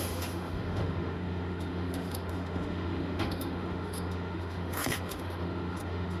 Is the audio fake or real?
fake